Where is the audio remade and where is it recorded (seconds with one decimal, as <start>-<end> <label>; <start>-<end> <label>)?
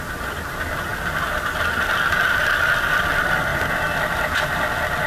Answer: 0.0-5.1 recorded